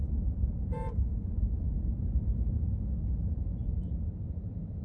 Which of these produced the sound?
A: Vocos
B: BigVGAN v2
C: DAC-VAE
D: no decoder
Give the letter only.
B